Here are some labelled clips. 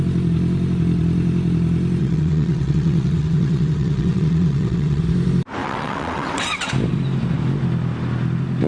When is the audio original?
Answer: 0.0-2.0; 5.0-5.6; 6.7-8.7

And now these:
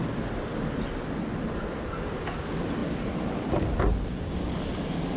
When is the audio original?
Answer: 0.0-5.2

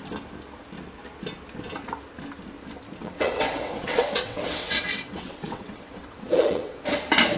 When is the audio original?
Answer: 0.0-3.0; 6.8-7.4

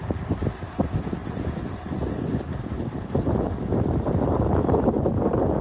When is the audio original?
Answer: 0.0-5.6